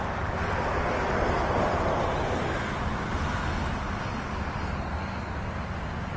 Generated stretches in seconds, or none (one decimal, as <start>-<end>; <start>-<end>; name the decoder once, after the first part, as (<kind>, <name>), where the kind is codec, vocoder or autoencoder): none